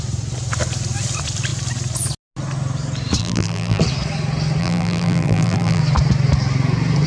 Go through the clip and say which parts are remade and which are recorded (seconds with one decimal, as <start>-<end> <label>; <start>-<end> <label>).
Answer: 0.0-3.2 recorded; 3.2-3.8 remade; 3.8-4.6 recorded; 4.6-5.8 remade; 5.8-7.1 recorded